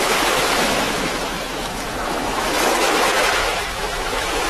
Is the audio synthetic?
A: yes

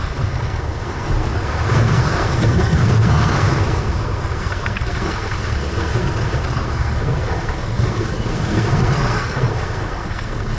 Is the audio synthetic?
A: yes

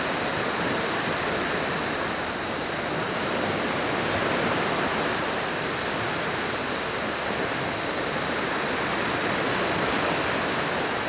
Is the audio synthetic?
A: no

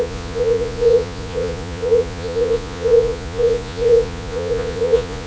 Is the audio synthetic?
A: yes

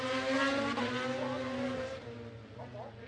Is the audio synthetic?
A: no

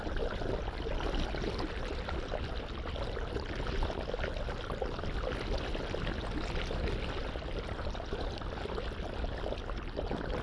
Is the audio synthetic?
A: no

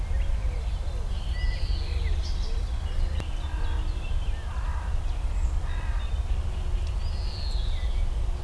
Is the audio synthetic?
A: no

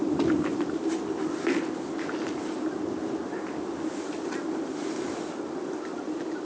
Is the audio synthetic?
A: no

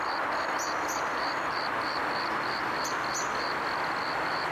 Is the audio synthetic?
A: no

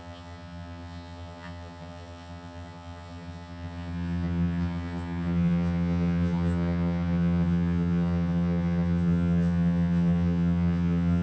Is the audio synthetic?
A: yes